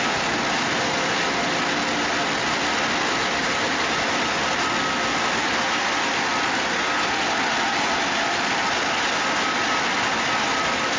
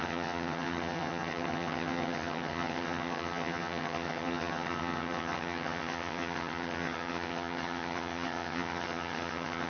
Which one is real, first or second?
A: first